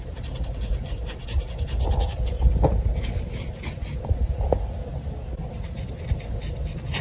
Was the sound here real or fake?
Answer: real